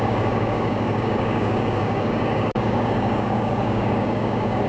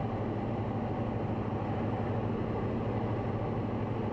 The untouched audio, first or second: second